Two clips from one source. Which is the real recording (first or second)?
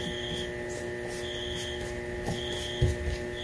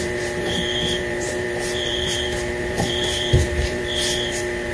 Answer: first